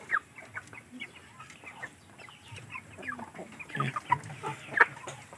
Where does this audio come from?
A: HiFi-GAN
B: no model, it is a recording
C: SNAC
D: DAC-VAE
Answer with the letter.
B